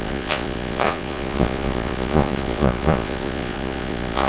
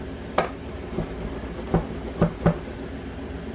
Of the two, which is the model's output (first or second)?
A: first